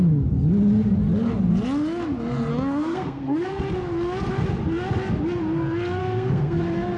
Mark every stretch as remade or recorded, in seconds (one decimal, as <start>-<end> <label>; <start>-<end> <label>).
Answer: 0.0-2.5 recorded; 2.5-3.6 remade; 3.6-6.0 recorded; 6.0-6.6 remade; 6.6-7.0 recorded